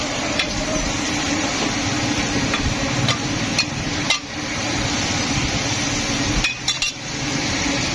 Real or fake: fake